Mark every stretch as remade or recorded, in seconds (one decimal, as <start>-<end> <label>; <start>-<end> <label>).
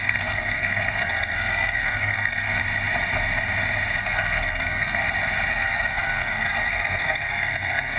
0.0-2.6 remade; 2.6-4.0 recorded; 4.0-5.0 remade; 5.0-5.5 recorded; 5.5-8.0 remade